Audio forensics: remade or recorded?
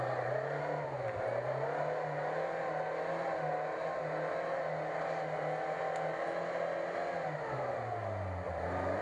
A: recorded